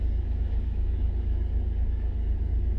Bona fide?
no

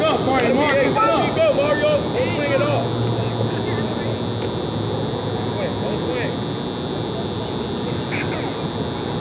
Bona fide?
yes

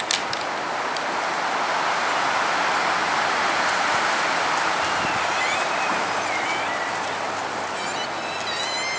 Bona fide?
yes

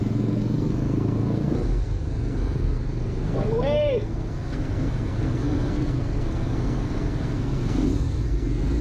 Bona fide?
no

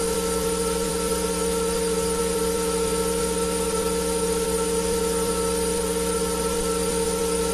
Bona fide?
no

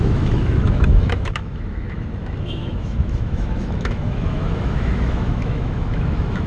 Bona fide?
no